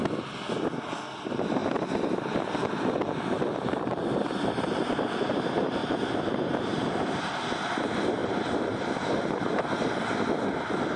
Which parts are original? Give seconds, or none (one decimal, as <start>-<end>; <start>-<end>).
0.0-5.8; 7.4-8.2; 9.9-11.0